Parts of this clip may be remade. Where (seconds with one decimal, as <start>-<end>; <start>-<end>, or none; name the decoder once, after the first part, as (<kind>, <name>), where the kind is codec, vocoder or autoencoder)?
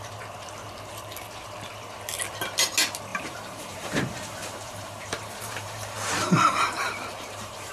3.1-7.7 (vocoder, BigVGAN v2)